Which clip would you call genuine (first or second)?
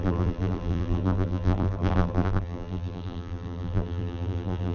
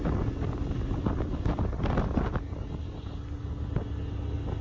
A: second